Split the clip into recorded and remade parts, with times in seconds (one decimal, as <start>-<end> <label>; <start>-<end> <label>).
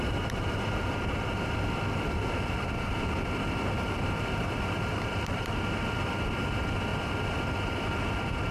0.0-6.9 remade; 6.9-7.7 recorded; 7.7-8.5 remade